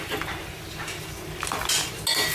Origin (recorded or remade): recorded